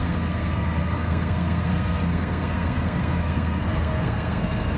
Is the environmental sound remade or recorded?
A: remade